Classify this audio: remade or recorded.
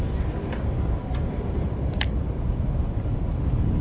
remade